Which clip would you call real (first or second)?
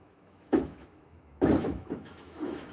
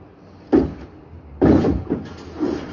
second